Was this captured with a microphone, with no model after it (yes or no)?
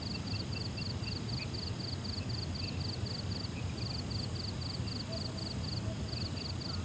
yes